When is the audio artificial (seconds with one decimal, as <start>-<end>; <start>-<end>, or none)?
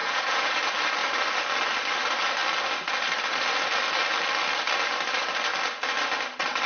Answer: 0.0-0.6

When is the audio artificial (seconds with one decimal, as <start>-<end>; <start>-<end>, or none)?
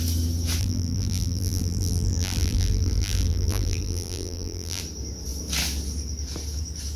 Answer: 0.6-4.8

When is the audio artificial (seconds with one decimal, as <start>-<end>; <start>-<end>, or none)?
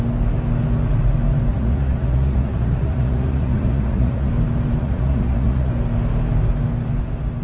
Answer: 1.5-4.3; 4.8-5.7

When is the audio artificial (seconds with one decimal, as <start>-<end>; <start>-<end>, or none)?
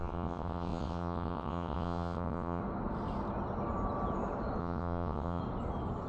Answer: 0.0-2.6; 4.6-5.4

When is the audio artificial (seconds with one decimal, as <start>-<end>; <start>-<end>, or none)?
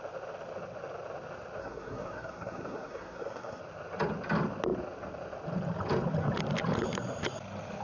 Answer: 1.6-3.6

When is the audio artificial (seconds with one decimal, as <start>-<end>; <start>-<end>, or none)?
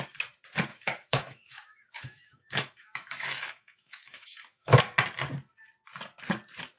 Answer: 0.7-4.8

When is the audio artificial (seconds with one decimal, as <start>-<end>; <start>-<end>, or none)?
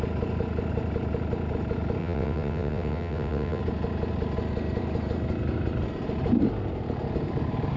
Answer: 2.0-3.6